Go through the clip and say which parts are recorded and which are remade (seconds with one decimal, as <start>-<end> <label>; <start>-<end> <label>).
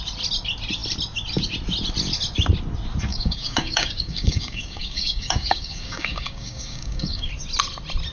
0.0-3.1 recorded; 3.1-7.3 remade; 7.3-8.1 recorded